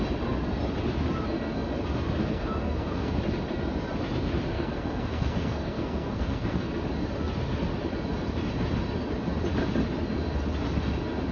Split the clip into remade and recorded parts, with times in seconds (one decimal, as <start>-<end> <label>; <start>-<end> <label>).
0.0-2.2 recorded; 2.2-3.1 remade; 3.1-4.5 recorded; 4.5-6.7 remade; 6.7-11.3 recorded